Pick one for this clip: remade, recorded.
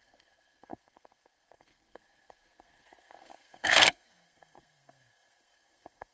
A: remade